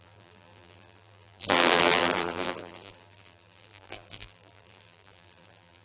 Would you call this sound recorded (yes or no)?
no